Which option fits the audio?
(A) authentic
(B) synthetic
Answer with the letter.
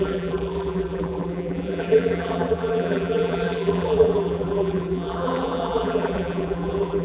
B